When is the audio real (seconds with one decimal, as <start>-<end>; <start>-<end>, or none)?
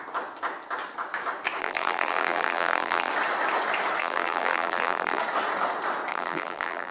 0.0-1.6; 3.1-4.0; 5.2-6.1